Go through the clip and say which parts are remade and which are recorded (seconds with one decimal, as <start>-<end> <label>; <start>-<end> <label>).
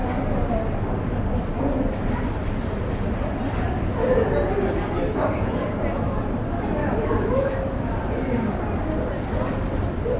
0.0-6.8 recorded; 6.8-7.9 remade; 7.9-10.2 recorded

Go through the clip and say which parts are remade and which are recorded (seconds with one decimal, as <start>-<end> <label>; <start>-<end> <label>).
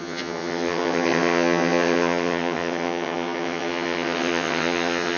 0.0-5.2 remade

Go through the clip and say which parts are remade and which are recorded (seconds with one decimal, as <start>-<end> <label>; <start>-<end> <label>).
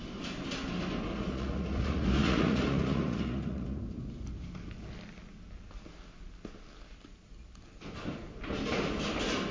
0.0-1.1 recorded; 1.1-3.8 remade; 3.8-9.5 recorded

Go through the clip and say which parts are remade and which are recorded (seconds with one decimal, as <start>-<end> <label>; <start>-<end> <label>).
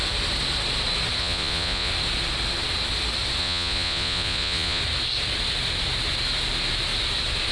0.0-1.2 recorded; 1.2-1.9 remade; 1.9-3.4 recorded; 3.4-4.8 remade; 4.8-7.5 recorded